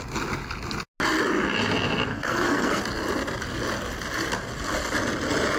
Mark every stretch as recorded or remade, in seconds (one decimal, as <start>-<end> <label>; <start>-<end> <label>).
0.0-2.1 recorded; 2.1-2.8 remade; 2.8-5.6 recorded